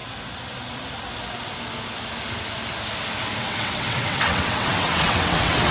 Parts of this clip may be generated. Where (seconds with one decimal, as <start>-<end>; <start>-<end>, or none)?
3.4-5.7